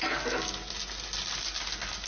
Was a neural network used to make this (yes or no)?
no